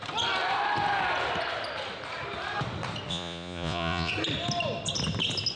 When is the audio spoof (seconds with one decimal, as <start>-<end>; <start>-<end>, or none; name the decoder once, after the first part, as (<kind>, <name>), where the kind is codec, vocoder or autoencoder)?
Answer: 3.1-4.1 (vocoder, Vocos)